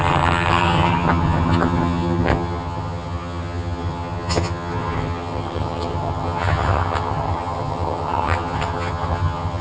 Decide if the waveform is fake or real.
fake